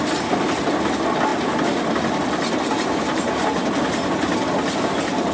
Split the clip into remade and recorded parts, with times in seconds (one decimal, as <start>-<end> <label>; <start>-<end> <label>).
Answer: 0.0-5.3 recorded